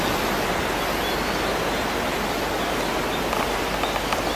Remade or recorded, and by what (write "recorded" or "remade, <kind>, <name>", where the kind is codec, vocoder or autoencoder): recorded